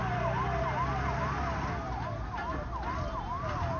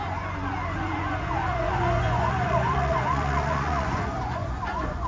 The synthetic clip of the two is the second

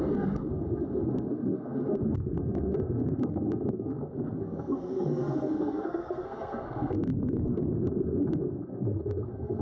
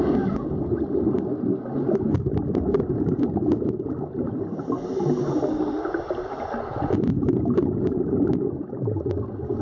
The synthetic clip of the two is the first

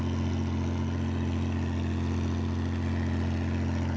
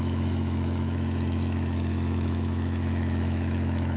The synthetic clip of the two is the second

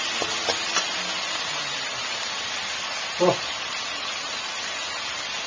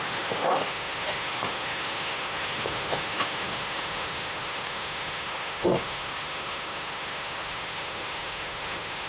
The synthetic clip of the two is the second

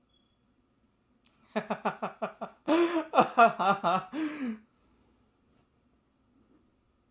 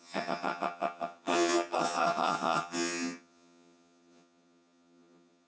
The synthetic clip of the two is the second